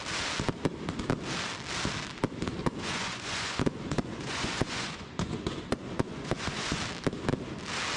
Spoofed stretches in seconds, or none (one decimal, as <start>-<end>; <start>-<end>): 2.6-6.8